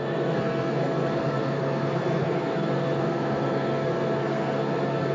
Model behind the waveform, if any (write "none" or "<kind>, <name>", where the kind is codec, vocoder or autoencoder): codec, SNAC